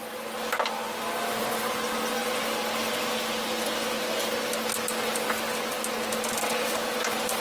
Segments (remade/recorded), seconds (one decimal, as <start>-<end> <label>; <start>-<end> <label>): 0.0-7.4 recorded